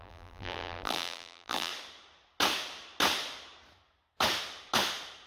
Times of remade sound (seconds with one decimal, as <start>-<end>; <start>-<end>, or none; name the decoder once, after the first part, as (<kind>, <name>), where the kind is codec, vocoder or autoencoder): 0.0-1.7 (vocoder, BigVGAN v2)